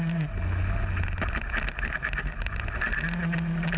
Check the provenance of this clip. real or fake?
real